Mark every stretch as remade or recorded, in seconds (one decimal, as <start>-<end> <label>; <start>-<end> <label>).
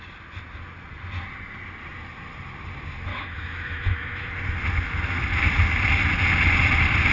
0.0-3.1 recorded; 3.1-4.3 remade; 4.3-7.1 recorded